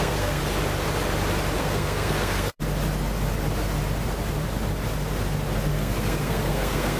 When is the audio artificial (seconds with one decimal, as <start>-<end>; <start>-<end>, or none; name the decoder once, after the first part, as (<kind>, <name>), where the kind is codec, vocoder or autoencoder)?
0.0-0.4 (codec, SNAC); 1.6-2.6; 5.7-7.0